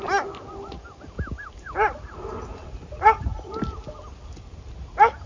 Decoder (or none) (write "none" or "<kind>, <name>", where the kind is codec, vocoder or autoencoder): none